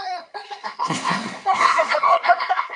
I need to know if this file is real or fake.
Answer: fake